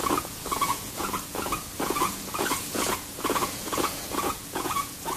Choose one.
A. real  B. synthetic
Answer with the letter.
B